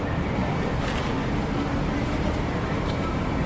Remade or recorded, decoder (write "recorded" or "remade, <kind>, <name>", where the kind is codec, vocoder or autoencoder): recorded